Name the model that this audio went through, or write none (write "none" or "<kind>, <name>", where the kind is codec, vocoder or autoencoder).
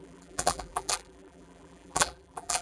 vocoder, BigVGAN v2